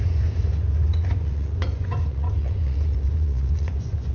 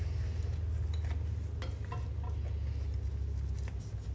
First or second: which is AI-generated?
first